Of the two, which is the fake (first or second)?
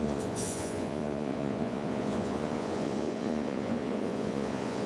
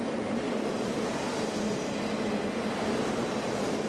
first